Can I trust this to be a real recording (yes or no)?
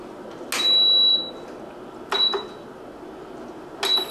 yes